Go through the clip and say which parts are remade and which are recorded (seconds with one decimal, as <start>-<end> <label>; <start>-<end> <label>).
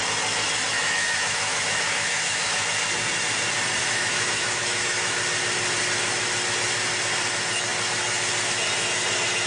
0.0-0.7 recorded; 0.7-2.7 remade; 2.7-3.8 recorded; 3.8-5.2 remade; 5.2-9.5 recorded